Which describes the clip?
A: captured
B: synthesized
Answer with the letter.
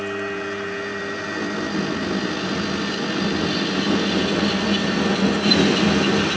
A